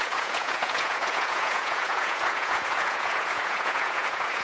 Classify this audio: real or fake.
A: fake